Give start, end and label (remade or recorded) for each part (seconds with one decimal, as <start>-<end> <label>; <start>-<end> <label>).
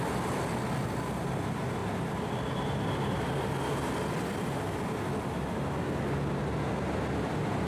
0.0-7.7 recorded